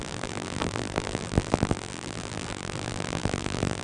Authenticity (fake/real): fake